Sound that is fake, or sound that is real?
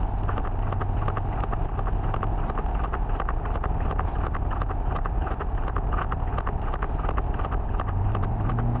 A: real